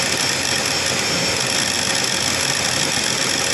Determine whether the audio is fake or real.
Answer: real